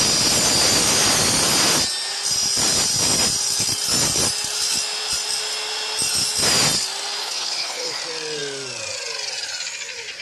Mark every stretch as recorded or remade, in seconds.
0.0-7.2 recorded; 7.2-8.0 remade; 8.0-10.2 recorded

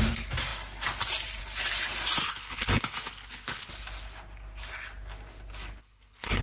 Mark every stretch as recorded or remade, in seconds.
0.0-2.2 recorded; 2.2-3.7 remade; 3.7-5.8 recorded; 5.8-6.4 remade

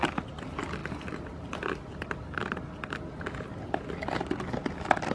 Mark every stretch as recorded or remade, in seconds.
0.0-5.1 recorded

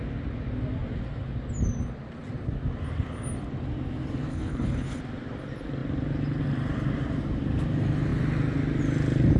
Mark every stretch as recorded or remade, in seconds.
0.0-4.3 recorded; 4.3-5.0 remade; 5.0-9.4 recorded